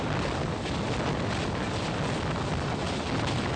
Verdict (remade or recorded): recorded